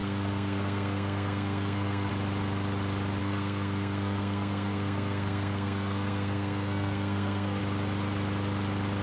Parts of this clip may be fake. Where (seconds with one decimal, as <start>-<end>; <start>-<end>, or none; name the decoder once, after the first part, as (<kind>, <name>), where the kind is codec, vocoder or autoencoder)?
0.0-2.1 (codec, SNAC); 3.2-7.6